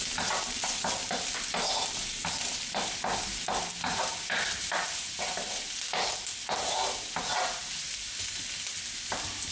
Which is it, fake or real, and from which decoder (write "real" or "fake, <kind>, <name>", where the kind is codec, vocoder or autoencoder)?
real